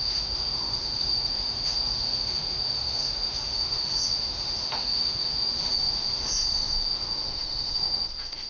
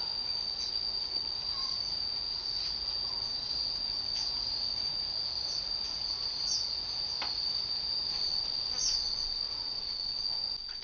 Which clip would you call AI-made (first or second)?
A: first